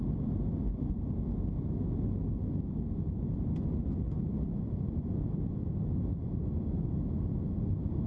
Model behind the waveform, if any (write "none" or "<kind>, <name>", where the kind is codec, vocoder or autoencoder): none